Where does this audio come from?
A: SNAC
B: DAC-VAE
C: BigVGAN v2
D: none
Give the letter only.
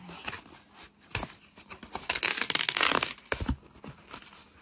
D